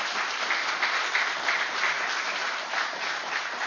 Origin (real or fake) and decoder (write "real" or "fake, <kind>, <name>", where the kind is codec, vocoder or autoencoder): real